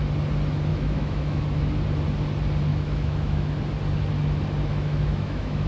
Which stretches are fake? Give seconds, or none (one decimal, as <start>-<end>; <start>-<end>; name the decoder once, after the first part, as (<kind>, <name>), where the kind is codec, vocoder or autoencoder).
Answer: 0.7-1.4 (autoencoder, DAC-VAE); 2.7-3.5; 4.7-5.7